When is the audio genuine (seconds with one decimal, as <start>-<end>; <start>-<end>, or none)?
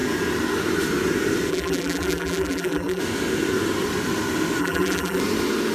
0.0-1.5; 3.0-4.6; 5.2-5.7